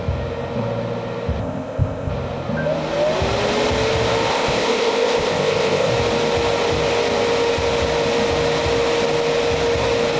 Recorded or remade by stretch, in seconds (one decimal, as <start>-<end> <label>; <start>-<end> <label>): 0.0-1.4 recorded; 1.4-2.1 remade; 2.1-4.3 recorded; 4.3-5.9 remade; 5.9-10.2 recorded